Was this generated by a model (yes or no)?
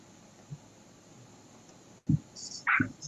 no